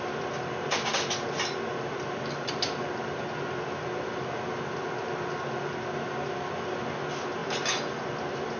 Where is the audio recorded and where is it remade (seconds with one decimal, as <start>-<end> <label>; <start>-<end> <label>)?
0.0-8.6 recorded